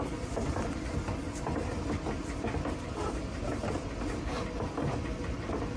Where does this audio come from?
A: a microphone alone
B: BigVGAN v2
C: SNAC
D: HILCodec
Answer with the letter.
A